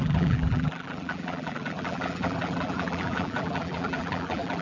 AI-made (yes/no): yes